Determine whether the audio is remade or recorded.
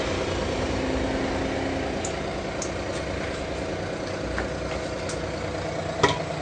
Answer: recorded